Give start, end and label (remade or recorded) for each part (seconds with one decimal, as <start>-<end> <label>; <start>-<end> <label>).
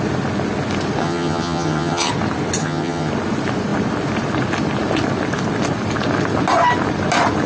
0.0-1.0 recorded; 1.0-2.1 remade; 2.1-2.6 recorded; 2.6-3.1 remade; 3.1-7.5 recorded